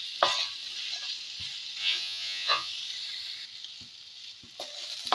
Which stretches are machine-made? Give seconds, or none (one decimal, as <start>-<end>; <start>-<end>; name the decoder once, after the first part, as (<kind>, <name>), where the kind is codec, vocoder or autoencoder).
1.8-2.7 (vocoder, Vocos)

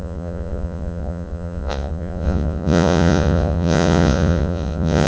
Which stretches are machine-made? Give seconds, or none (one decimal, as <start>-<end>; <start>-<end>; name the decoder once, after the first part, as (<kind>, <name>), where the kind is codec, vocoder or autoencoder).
0.0-5.1 (vocoder, Vocos)

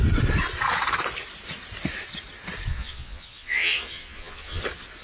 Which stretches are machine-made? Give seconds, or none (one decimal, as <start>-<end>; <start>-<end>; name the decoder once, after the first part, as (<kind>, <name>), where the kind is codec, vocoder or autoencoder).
2.7-4.6 (vocoder, Vocos)

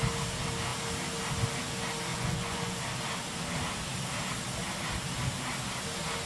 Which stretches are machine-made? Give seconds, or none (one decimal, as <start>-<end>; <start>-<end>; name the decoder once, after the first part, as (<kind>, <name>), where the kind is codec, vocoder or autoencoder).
2.1-2.8 (vocoder, Vocos)